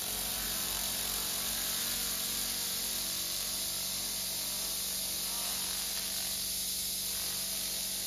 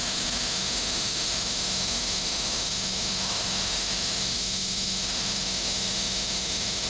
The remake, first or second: second